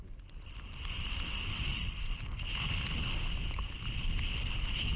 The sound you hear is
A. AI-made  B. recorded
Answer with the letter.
B